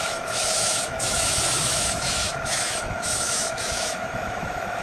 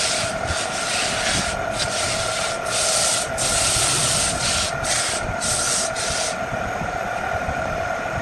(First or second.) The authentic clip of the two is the second